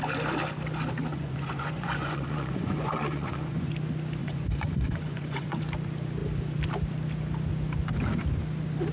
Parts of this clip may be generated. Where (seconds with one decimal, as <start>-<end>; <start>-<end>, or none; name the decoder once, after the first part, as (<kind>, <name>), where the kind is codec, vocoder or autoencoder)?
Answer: 1.1-3.7 (vocoder, Vocos); 4.2-5.6